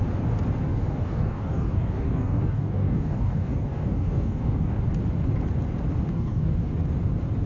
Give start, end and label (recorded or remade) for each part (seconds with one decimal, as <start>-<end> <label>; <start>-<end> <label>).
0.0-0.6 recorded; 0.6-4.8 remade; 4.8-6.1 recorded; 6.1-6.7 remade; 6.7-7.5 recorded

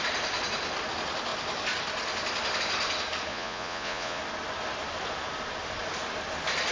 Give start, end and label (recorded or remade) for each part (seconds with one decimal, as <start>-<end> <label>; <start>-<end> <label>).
0.0-3.3 recorded; 3.3-4.2 remade; 4.2-6.7 recorded

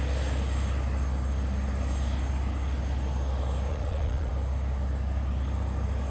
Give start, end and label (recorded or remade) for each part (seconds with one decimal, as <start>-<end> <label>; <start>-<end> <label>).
0.0-3.7 recorded; 3.7-4.3 remade; 4.3-6.1 recorded